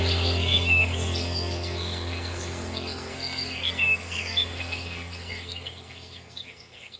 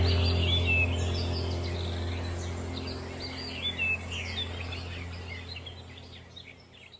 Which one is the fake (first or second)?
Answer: first